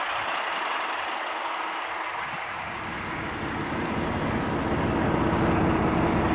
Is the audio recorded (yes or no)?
yes